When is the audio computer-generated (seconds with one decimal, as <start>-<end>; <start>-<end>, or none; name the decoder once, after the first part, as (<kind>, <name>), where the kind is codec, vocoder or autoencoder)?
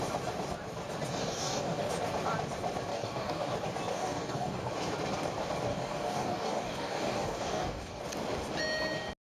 1.2-1.9 (codec, DAC); 2.9-3.5; 3.9-4.7; 5.7-8.0